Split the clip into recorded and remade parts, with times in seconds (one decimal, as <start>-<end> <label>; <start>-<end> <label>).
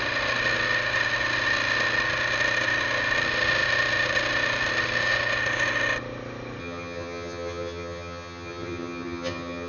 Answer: 0.0-6.6 recorded; 6.6-9.7 remade